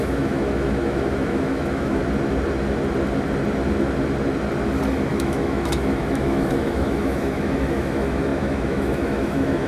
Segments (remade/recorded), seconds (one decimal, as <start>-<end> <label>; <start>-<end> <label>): 0.0-2.0 remade; 2.0-5.1 recorded; 5.1-9.7 remade